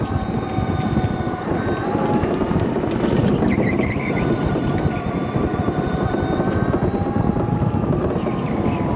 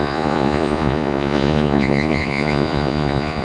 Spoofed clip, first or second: second